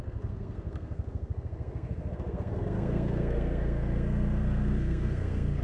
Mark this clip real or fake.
fake